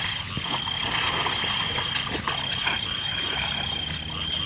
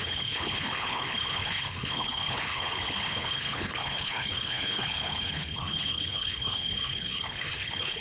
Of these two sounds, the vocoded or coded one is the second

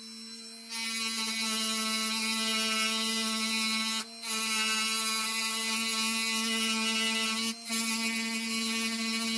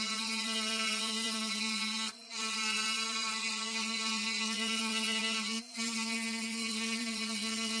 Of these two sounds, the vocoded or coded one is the second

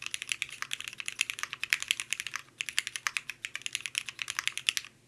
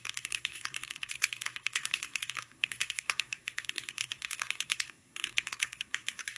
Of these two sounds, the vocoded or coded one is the second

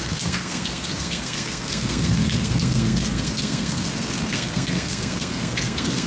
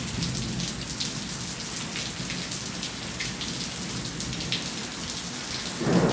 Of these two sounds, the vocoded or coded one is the first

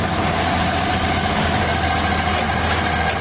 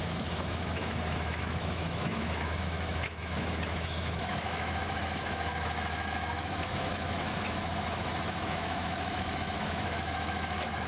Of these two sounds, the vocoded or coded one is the second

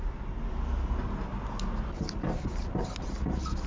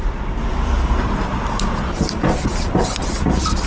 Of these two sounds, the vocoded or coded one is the second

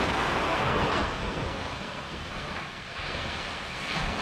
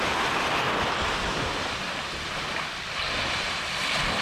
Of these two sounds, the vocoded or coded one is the first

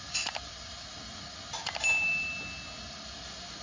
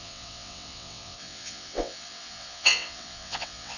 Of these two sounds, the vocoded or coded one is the second